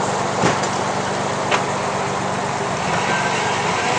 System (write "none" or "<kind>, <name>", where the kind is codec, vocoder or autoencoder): none